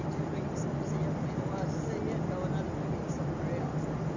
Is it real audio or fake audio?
real